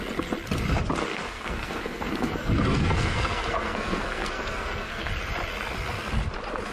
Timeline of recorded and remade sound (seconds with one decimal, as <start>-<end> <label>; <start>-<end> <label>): 0.0-1.1 recorded; 1.1-5.1 remade; 5.1-6.7 recorded